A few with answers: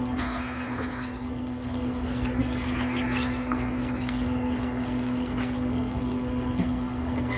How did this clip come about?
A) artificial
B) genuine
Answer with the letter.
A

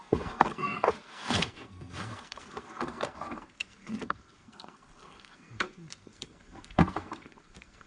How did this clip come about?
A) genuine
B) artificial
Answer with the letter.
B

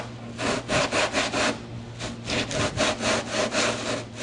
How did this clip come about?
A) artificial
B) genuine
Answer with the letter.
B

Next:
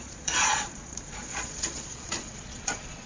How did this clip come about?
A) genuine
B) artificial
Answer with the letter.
B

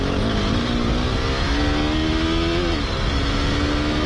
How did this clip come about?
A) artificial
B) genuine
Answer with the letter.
B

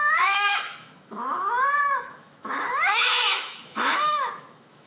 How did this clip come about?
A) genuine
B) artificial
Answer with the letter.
B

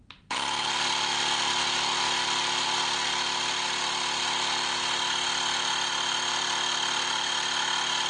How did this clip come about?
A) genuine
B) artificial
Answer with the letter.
A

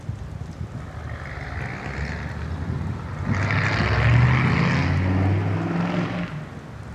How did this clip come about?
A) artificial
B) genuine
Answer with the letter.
B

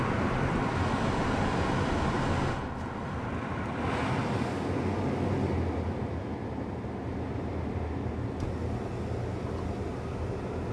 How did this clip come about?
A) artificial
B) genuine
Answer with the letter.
B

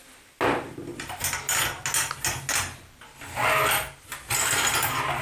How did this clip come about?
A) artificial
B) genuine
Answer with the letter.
B